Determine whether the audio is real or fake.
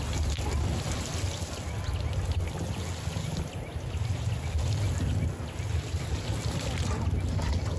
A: real